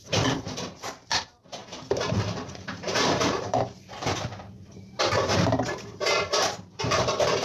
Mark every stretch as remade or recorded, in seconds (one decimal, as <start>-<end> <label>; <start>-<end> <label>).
0.0-7.4 remade